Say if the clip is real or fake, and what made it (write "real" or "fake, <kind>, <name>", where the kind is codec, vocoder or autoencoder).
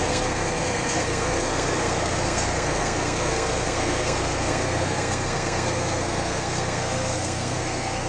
fake, codec, SNAC